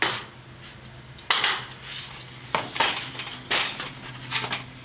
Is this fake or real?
real